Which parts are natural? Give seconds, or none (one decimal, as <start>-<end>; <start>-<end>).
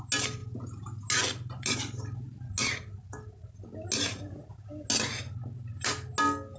0.0-6.6